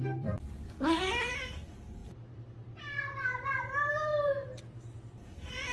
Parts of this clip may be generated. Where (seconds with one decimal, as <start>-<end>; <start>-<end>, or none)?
0.0-5.7